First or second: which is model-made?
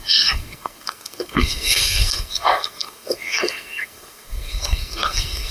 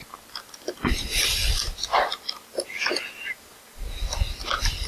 first